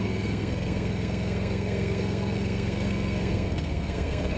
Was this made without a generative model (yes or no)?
no